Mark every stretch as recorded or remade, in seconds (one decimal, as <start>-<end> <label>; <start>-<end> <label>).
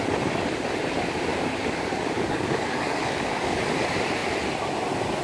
0.0-1.3 recorded; 1.3-3.6 remade; 3.6-5.2 recorded